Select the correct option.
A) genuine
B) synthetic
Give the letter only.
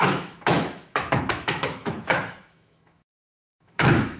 B